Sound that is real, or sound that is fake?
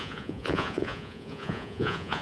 fake